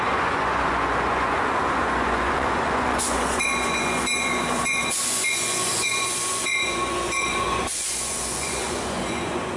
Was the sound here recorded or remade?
remade